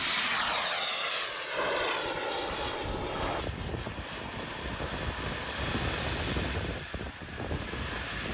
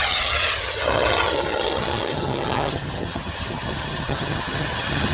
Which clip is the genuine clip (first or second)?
first